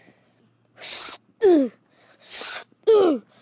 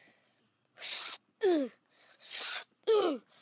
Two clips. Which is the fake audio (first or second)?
second